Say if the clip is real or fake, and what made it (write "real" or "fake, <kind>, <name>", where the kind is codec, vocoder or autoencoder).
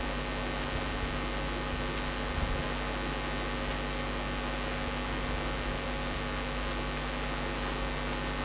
real